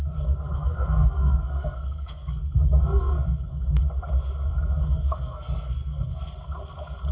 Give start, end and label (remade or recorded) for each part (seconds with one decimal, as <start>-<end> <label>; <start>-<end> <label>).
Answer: 0.0-3.8 remade; 3.8-4.5 recorded; 4.5-6.1 remade; 6.1-7.1 recorded